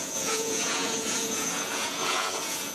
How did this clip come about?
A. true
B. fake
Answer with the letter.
B